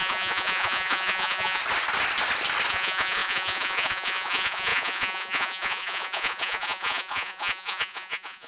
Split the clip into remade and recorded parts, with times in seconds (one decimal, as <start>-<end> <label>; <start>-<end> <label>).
0.0-1.6 remade; 1.6-2.7 recorded; 2.7-8.5 remade